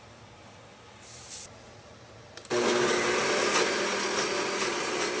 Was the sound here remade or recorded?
recorded